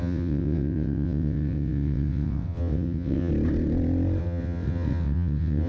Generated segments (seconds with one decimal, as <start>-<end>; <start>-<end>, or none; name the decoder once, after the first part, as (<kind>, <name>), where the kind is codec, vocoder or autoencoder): 0.0-3.3 (vocoder, WaveNeXt); 4.2-5.7